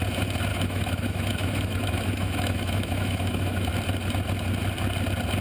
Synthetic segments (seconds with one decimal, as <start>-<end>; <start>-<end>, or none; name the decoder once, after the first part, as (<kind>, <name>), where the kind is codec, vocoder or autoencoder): 0.5-3.7 (autoencoder, DAC-VAE)